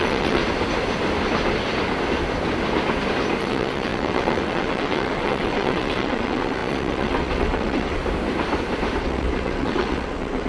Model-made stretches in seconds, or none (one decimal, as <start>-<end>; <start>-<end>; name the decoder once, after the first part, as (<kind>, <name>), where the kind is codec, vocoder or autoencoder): 0.0-0.4 (vocoder, WaveNeXt); 3.4-8.0; 9.0-10.5